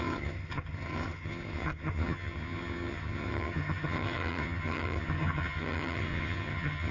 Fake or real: fake